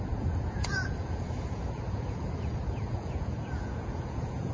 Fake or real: fake